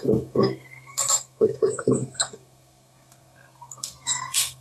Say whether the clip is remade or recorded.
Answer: remade